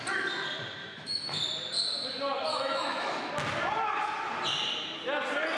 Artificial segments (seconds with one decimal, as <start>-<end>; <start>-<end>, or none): 0.8-1.4; 2.5-3.3